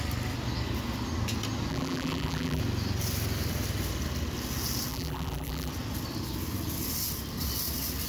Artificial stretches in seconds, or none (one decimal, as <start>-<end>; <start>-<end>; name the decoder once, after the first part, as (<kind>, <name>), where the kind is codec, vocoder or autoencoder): 1.7-2.6 (vocoder, BigVGAN v2); 4.9-5.7